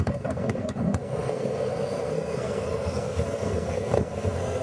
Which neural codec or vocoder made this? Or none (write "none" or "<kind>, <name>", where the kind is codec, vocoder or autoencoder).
codec, SNAC